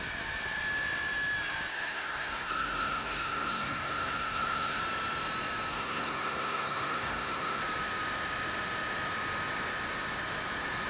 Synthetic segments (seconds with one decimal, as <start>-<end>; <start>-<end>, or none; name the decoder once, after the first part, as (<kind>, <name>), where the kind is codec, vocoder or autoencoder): 1.7-4.8 (codec, SNAC); 5.7-7.6